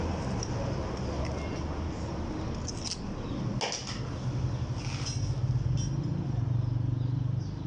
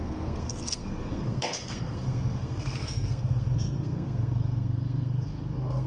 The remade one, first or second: second